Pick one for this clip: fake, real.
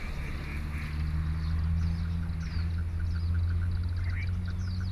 real